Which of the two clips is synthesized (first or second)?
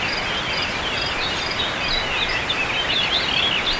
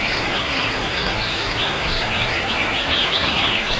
second